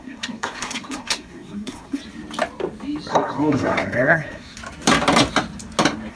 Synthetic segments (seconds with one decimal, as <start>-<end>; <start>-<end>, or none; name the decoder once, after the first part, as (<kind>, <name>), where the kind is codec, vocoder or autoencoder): 0.0-2.0 (codec, SNAC); 3.1-4.6